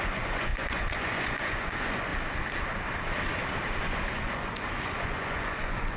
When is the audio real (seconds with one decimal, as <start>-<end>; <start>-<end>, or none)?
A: 2.1-3.8